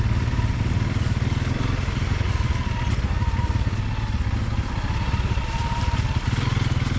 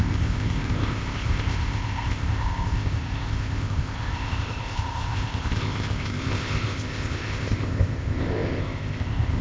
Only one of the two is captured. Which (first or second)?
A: first